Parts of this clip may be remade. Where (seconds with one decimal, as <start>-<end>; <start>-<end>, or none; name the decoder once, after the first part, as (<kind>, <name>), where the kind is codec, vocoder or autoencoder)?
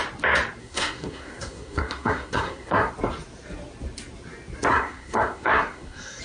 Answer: 0.6-2.9 (codec, SNAC); 4.7-6.2